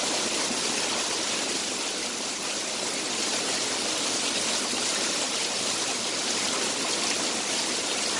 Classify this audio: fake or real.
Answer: real